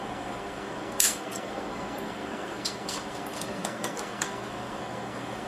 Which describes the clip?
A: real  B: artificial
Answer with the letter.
B